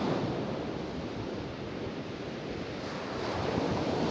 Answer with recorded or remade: recorded